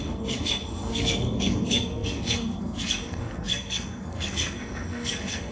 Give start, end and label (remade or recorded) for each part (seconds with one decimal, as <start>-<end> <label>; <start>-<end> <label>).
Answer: 0.0-5.5 remade